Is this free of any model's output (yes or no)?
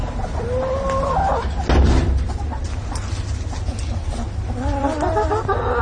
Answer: yes